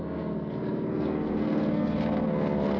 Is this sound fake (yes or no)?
yes